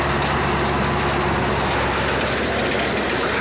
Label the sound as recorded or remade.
recorded